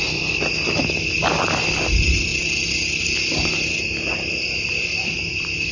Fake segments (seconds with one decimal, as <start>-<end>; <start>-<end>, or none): none